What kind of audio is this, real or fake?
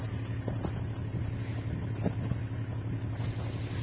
real